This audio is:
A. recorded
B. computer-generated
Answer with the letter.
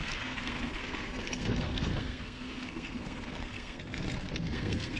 B